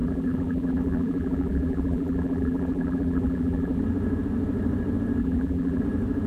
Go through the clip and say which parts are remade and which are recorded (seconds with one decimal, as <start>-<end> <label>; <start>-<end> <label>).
0.0-3.8 remade; 3.8-5.2 recorded; 5.2-5.8 remade; 5.8-6.3 recorded